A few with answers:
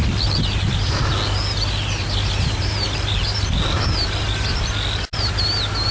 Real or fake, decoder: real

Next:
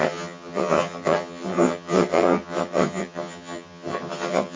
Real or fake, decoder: fake, vocoder, HiFi-GAN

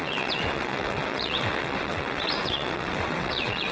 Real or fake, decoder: fake, vocoder, WaveNeXt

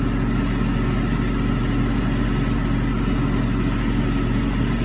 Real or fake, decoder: real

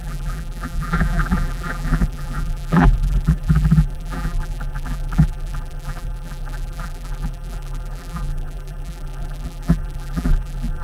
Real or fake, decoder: fake, vocoder, BigVGAN v2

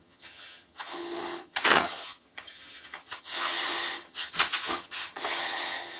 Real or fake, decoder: fake, vocoder, HiFi-GAN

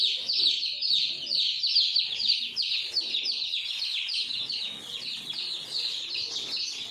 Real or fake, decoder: real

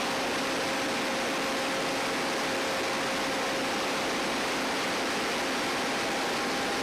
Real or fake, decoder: real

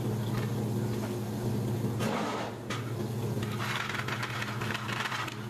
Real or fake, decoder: real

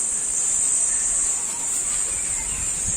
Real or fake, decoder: real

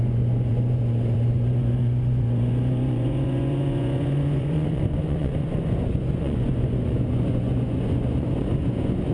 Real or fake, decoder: fake, vocoder, Vocos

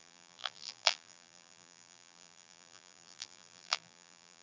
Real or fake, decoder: fake, vocoder, BigVGAN v2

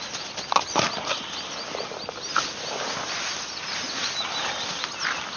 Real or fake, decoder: real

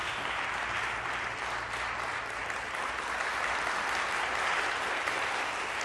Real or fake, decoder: real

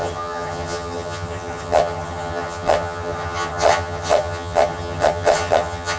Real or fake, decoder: fake, vocoder, HiFi-GAN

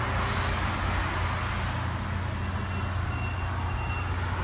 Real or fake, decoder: real